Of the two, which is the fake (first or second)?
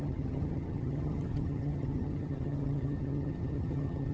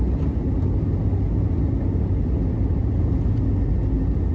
first